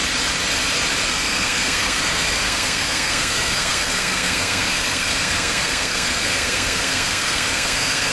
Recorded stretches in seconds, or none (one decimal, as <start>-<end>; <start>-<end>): 0.0-1.1